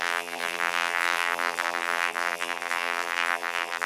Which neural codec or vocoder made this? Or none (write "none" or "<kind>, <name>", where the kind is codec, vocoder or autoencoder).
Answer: vocoder, BigVGAN v2